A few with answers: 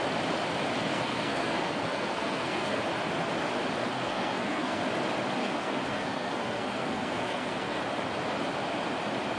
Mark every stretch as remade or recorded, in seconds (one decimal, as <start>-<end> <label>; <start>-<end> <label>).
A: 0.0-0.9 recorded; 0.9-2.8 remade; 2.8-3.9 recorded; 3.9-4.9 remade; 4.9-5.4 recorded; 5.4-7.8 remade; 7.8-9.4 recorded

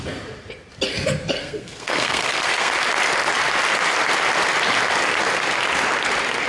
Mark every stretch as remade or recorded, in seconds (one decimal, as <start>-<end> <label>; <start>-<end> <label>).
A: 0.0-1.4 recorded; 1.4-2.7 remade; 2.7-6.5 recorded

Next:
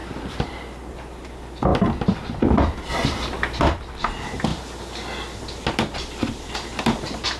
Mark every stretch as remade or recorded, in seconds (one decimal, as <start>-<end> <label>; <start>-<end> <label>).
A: 0.0-1.7 remade; 1.7-2.5 recorded; 2.5-2.9 remade; 2.9-3.6 recorded; 3.6-7.4 remade

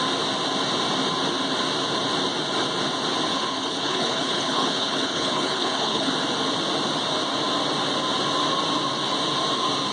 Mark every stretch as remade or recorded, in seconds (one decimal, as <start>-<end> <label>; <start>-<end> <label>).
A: 0.0-3.3 recorded; 3.3-6.1 remade; 6.1-9.9 recorded

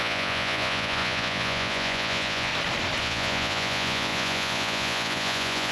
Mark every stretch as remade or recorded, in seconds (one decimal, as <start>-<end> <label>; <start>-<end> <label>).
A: 0.0-2.5 remade; 2.5-3.0 recorded; 3.0-5.7 remade